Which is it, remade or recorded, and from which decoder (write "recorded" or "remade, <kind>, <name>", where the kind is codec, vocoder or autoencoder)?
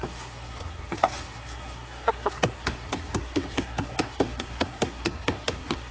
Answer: remade, codec, SNAC